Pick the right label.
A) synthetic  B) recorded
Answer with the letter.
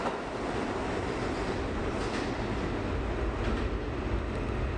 B